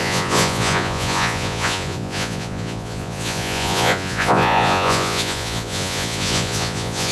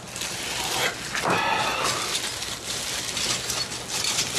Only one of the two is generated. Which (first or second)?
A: first